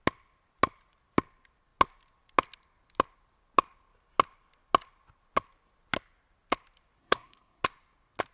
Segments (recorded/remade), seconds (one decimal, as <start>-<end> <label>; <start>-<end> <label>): 0.0-7.0 recorded; 7.0-7.6 remade; 7.6-8.3 recorded